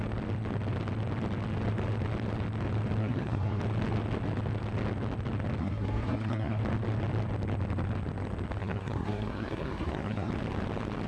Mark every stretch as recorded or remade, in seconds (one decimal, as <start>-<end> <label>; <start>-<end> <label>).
0.0-3.0 recorded; 3.0-3.6 remade; 3.6-5.6 recorded; 5.6-6.6 remade; 6.6-8.6 recorded; 8.6-10.3 remade; 10.3-11.1 recorded